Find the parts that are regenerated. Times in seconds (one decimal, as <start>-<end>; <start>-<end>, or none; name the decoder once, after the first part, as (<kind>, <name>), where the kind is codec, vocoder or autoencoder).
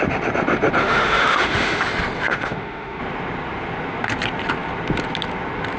0.8-1.8 (autoencoder, DAC-VAE); 2.3-3.0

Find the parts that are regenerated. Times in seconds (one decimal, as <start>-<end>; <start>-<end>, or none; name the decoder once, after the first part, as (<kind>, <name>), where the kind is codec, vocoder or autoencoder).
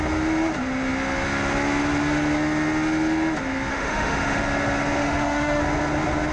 3.7-4.4 (autoencoder, DAC-VAE); 5.0-5.6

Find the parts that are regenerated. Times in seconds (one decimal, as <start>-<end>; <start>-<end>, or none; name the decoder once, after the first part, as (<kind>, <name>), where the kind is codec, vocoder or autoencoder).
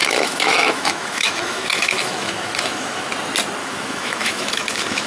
0.0-3.1 (autoencoder, DAC-VAE); 3.6-5.1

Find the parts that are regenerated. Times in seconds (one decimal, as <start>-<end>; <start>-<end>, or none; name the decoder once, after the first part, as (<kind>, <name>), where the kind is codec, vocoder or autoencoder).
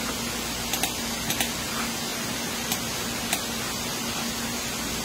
none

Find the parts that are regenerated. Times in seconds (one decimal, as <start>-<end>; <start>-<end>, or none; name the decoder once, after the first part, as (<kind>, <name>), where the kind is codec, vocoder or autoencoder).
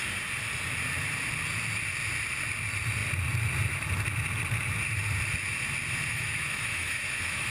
6.1-7.5 (autoencoder, DAC-VAE)